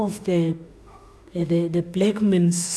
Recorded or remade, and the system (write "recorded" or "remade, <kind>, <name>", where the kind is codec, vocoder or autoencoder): remade, autoencoder, DAC-VAE